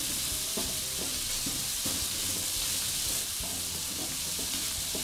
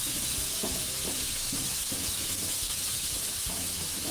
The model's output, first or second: second